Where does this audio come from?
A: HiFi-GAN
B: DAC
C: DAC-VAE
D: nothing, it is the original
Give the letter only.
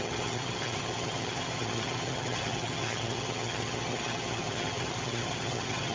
A